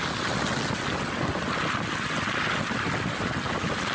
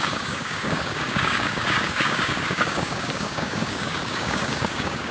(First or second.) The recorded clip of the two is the first